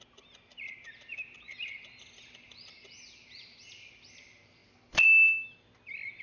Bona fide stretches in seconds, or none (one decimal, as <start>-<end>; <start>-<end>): 0.0-6.2